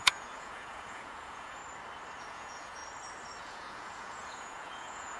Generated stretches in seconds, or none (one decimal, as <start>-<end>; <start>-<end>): 0.0-1.6; 2.2-2.8; 3.4-5.2